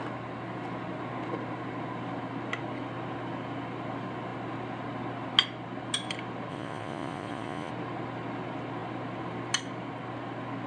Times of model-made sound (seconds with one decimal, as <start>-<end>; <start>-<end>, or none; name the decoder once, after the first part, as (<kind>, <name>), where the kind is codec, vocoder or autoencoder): 6.5-7.7 (vocoder, Vocos)